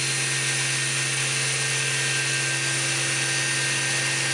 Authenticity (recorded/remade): recorded